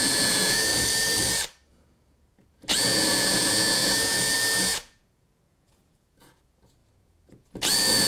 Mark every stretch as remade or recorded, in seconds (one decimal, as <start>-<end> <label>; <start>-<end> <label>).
0.0-0.7 remade; 0.7-1.7 recorded; 1.7-8.1 remade